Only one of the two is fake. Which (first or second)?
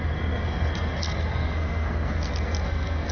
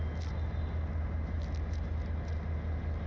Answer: first